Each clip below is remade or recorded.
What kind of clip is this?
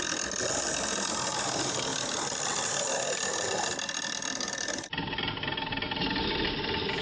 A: recorded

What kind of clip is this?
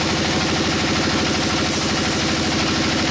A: recorded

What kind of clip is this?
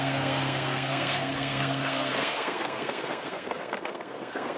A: remade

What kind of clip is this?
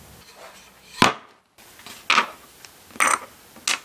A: recorded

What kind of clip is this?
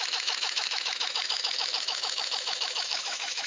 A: remade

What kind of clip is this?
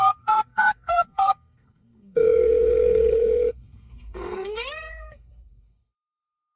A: remade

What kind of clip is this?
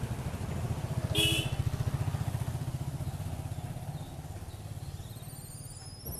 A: recorded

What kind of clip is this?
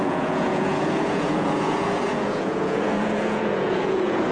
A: remade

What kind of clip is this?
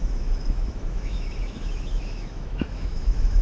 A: remade